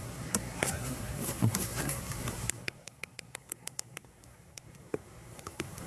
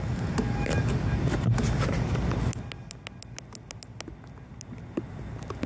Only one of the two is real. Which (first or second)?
second